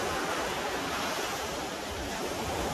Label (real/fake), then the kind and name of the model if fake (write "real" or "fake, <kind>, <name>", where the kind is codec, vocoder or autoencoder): real